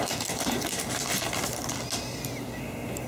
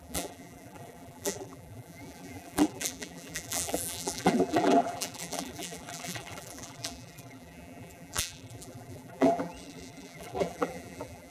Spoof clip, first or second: second